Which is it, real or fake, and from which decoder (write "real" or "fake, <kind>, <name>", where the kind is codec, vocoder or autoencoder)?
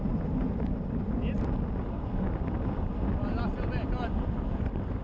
real